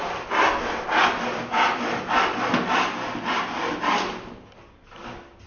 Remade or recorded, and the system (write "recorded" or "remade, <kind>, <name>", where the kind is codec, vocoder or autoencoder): recorded